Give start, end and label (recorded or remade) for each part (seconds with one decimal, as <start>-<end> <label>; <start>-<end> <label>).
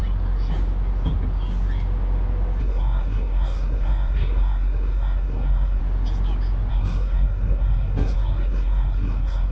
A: 0.0-2.6 recorded; 2.6-5.8 remade; 5.8-6.7 recorded; 6.7-9.5 remade